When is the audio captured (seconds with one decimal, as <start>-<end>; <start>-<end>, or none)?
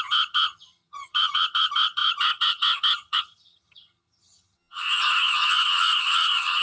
none